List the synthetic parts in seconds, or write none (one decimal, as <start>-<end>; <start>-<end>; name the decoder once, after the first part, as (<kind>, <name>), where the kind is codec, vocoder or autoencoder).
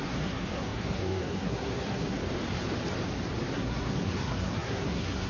0.0-2.2 (codec, SNAC); 3.4-5.3